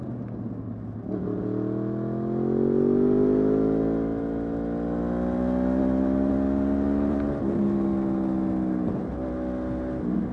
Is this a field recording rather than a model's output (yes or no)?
yes